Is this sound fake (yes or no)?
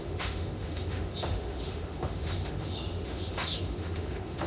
yes